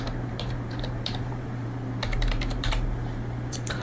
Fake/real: fake